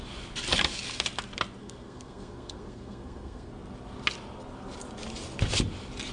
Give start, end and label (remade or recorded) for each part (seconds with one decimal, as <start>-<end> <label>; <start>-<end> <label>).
0.0-1.6 recorded; 1.6-3.5 remade; 3.5-6.1 recorded